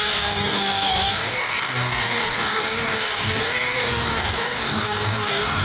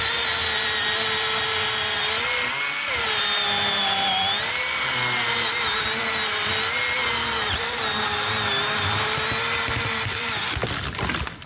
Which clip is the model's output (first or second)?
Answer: first